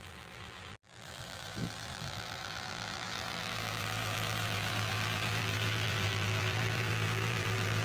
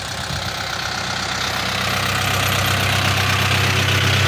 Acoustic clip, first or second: second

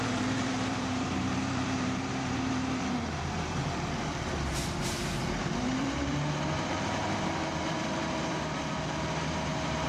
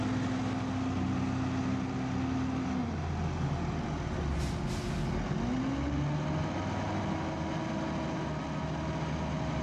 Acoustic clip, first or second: second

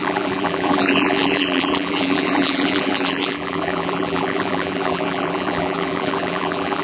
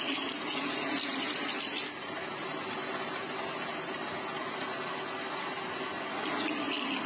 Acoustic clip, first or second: second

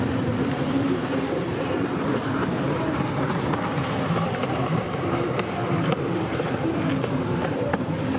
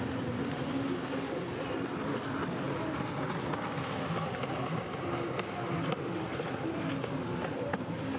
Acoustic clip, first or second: second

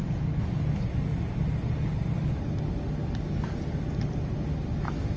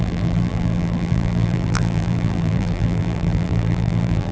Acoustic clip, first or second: first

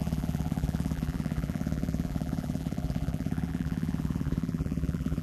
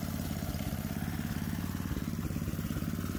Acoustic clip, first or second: second